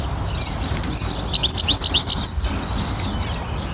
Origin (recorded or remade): recorded